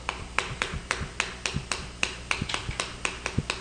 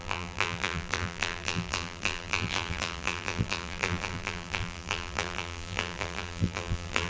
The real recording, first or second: first